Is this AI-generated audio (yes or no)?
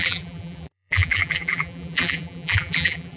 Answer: yes